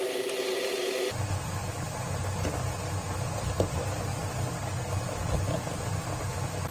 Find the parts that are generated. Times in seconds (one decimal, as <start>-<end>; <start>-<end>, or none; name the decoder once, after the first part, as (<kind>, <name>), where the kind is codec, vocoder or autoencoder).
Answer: none